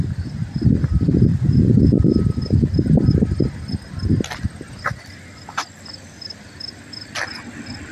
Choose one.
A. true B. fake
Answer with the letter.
A